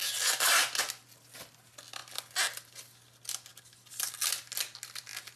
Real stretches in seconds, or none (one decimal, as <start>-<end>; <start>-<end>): 0.0-5.4